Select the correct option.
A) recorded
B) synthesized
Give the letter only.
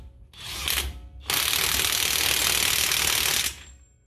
A